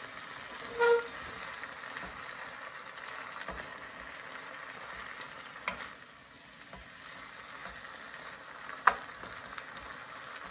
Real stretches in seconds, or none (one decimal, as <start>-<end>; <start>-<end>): 0.0-10.5